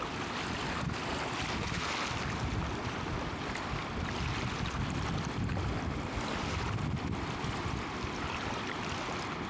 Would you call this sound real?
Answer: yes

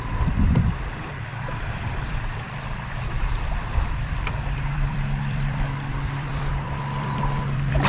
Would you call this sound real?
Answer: no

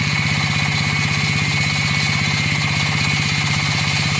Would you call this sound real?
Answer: yes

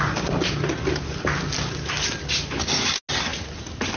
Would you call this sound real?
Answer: yes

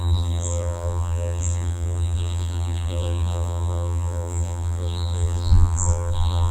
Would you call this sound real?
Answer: no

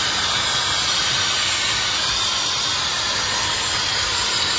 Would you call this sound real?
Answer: yes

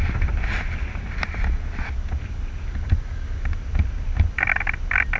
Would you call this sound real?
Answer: yes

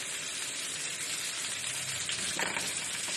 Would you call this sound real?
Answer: no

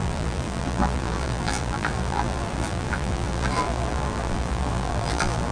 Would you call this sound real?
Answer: no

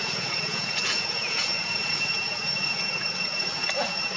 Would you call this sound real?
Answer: no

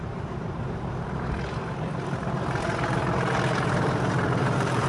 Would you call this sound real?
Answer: no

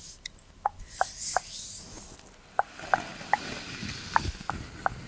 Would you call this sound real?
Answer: yes